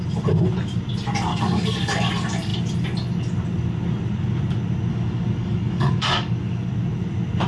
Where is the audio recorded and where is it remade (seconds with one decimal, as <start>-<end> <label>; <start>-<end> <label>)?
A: 0.0-1.3 recorded; 1.3-2.1 remade; 2.1-4.9 recorded; 4.9-6.7 remade; 6.7-7.5 recorded